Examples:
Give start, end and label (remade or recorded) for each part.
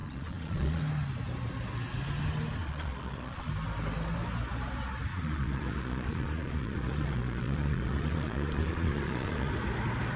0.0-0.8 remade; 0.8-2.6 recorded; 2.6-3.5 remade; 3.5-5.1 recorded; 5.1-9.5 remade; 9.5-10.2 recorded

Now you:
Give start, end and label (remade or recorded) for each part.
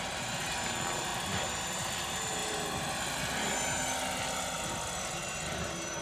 0.0-6.0 recorded